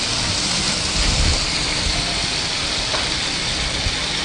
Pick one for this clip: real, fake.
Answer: fake